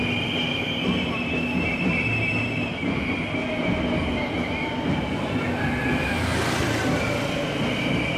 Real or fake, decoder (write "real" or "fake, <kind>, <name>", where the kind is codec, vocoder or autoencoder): real